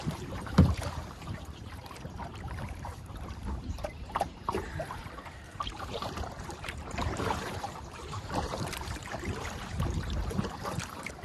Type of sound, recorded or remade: remade